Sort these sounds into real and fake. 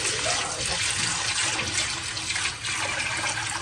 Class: real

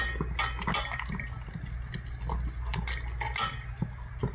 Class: real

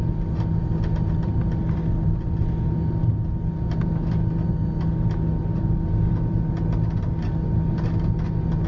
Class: real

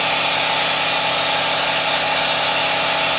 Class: real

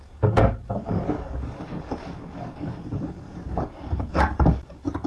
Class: fake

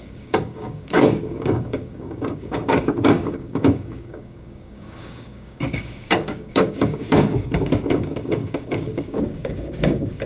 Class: fake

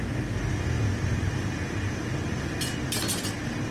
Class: real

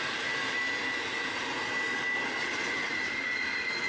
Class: real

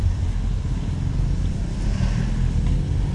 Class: real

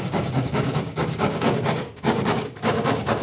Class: fake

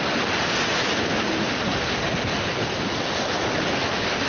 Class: real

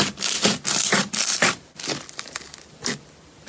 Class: real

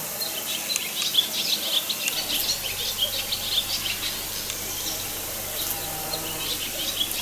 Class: real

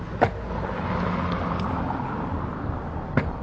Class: real